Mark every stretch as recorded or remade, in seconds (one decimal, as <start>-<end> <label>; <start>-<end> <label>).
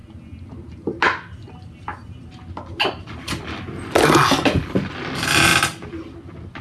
0.0-6.6 recorded